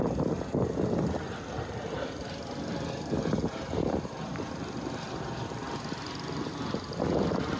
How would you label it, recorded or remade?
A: recorded